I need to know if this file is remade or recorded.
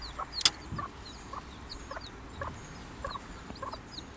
recorded